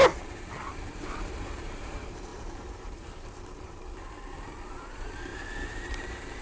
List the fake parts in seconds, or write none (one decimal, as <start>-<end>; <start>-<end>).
1.0-6.4